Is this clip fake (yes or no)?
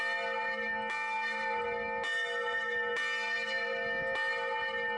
no